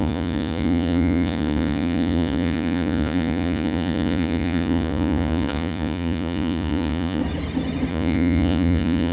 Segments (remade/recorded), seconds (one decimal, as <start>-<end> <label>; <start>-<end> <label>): 0.0-7.2 remade; 7.2-7.9 recorded; 7.9-9.1 remade